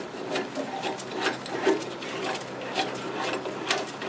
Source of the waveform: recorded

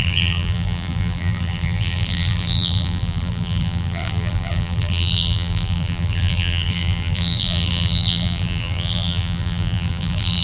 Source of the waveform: remade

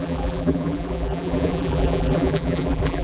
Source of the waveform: remade